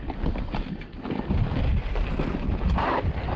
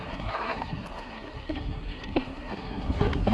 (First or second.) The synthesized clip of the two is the second